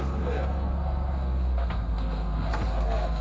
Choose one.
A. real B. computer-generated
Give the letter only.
B